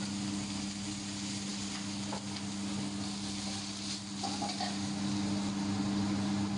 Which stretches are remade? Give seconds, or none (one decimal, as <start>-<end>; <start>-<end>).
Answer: none